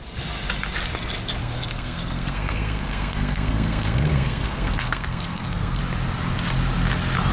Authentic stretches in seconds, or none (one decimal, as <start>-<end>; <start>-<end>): 0.0-1.4; 5.8-7.3